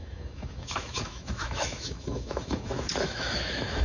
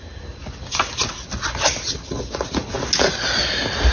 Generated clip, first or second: first